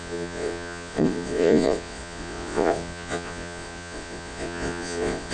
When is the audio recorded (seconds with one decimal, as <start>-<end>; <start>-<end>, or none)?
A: none